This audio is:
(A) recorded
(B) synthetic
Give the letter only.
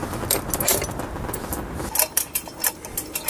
A